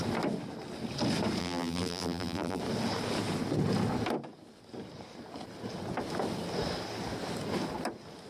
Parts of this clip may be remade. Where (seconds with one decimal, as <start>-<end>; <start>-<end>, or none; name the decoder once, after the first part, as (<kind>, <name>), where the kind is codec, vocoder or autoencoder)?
1.4-2.6 (vocoder, BigVGAN v2)